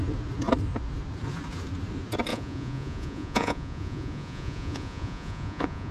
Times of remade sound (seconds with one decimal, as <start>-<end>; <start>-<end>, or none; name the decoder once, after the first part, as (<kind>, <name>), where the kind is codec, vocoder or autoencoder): 2.3-5.9 (vocoder, Vocos)